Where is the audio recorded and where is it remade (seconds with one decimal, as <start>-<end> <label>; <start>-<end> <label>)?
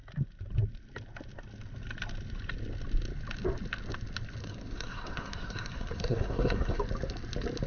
0.0-4.4 recorded; 4.4-6.8 remade; 6.8-7.7 recorded